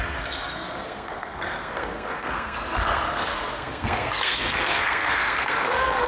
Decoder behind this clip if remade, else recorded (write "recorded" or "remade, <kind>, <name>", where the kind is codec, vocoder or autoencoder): remade, codec, SNAC